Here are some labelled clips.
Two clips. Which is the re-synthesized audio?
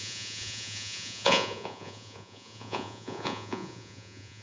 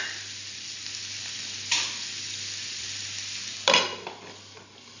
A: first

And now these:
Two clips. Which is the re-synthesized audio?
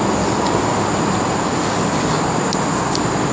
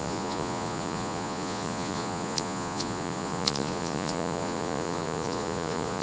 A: second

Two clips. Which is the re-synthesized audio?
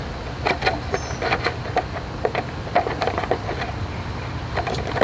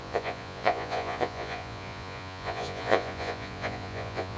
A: second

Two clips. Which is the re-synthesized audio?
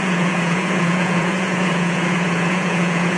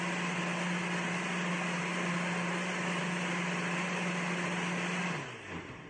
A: first